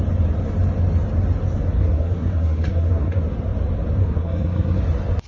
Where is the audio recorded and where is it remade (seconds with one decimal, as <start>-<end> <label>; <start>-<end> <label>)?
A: 0.0-1.8 recorded; 1.8-3.2 remade; 3.2-4.0 recorded; 4.0-4.8 remade; 4.8-5.3 recorded